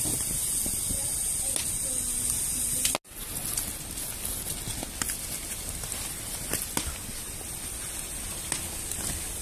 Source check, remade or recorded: recorded